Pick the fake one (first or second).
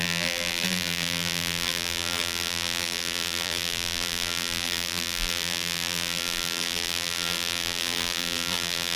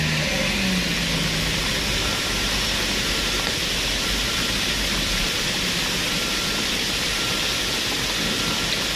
first